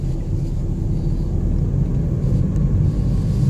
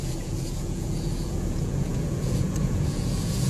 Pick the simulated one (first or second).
second